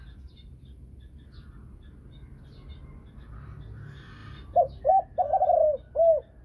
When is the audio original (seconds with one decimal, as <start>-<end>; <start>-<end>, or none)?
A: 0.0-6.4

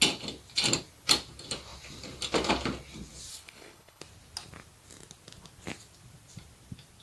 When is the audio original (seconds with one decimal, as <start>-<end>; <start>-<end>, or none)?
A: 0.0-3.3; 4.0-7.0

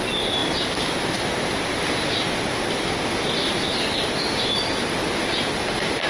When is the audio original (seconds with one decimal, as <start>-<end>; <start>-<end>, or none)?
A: 0.0-6.1